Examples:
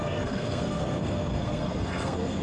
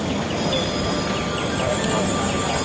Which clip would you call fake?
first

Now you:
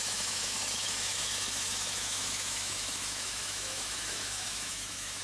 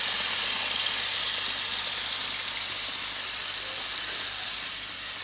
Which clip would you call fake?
first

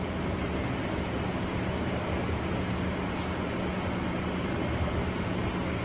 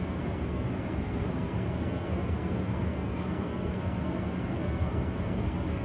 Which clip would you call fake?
second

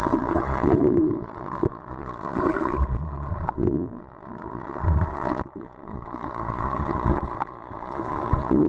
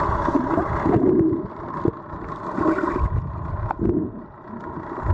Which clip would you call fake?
first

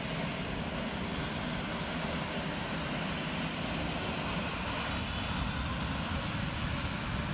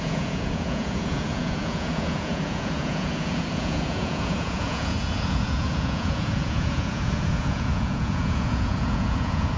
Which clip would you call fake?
second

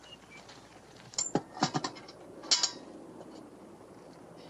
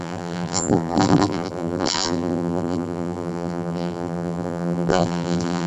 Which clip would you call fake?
second